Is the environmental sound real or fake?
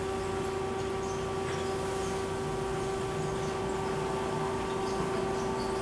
real